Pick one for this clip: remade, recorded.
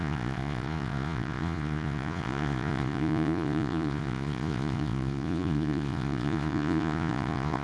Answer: remade